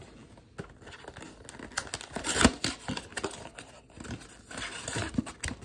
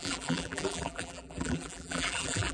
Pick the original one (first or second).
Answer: first